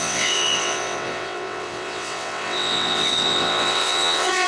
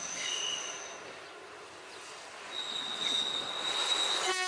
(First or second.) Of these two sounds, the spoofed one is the first